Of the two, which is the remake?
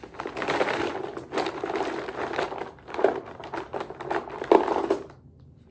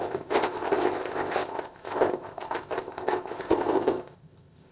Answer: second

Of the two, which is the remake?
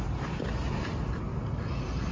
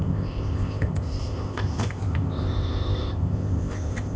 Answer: second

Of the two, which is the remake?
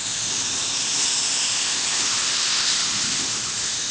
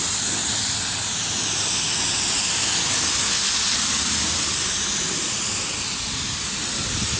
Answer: first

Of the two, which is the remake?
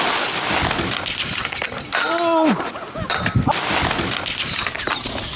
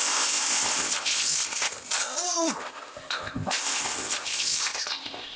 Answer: second